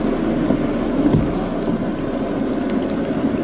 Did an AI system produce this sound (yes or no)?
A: no